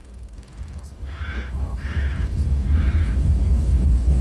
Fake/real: fake